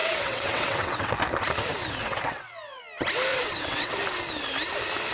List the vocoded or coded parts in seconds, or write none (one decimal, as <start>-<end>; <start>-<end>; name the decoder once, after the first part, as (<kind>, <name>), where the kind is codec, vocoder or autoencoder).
0.0-1.1 (vocoder, WaveNeXt); 2.0-2.8; 3.3-4.0